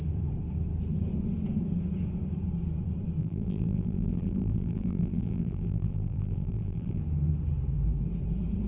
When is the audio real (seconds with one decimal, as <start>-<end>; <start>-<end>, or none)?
0.0-3.2; 7.0-8.7